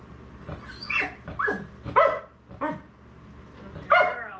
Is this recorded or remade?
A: recorded